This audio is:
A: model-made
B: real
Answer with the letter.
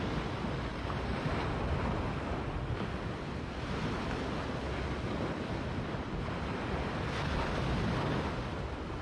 B